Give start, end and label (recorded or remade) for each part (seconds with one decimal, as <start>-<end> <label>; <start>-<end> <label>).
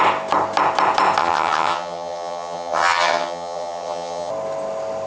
0.0-1.2 recorded; 1.2-4.3 remade; 4.3-5.1 recorded